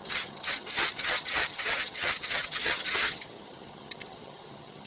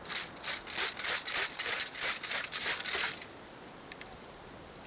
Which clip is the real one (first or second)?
second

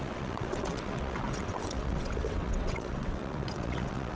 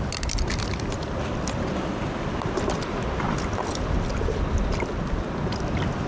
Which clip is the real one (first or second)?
second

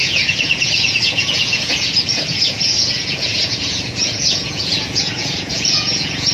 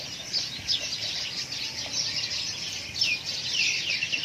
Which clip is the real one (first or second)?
second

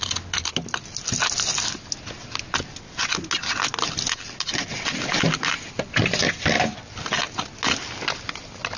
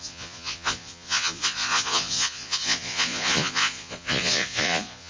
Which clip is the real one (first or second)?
first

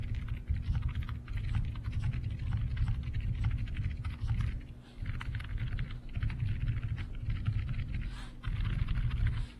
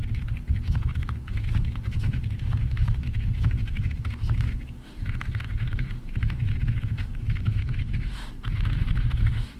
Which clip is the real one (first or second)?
first